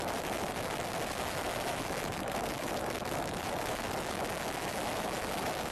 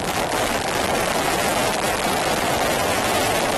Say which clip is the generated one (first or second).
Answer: first